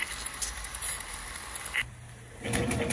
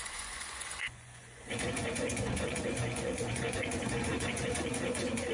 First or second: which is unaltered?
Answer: first